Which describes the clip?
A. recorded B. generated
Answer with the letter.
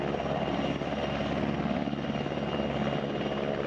A